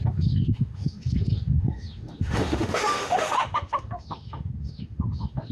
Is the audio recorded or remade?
remade